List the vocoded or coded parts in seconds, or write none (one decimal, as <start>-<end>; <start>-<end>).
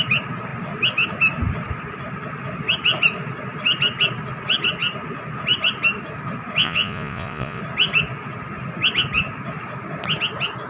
6.6-7.6